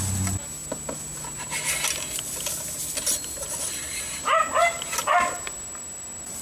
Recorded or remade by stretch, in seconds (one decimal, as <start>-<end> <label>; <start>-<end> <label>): 0.0-6.4 recorded